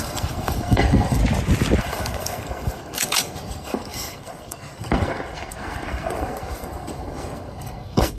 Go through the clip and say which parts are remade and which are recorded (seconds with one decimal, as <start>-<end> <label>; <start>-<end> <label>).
0.0-1.2 remade; 1.2-1.8 recorded; 1.8-8.2 remade